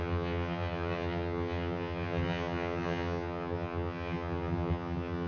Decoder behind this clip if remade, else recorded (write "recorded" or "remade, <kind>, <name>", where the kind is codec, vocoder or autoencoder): remade, vocoder, HiFi-GAN